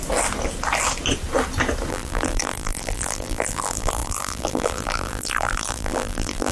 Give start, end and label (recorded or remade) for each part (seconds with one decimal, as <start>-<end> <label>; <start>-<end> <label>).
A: 0.0-1.9 recorded; 1.9-6.5 remade